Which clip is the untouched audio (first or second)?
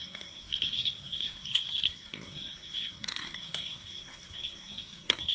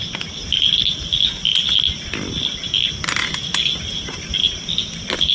second